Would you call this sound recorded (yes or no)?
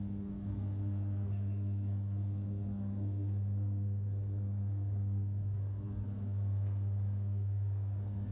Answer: no